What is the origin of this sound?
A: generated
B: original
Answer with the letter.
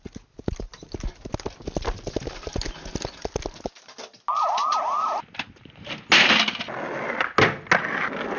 B